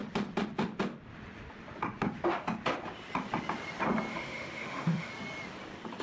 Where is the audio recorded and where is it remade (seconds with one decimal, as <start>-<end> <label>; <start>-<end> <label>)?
0.0-4.1 recorded; 4.1-5.1 remade; 5.1-6.0 recorded